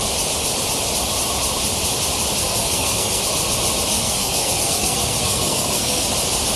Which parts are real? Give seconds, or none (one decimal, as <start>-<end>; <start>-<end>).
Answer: 0.0-2.4; 3.2-3.9; 6.1-6.6